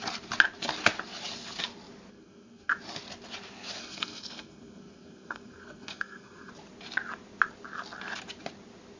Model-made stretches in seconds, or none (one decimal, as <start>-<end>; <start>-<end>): 2.1-2.7; 3.8-6.5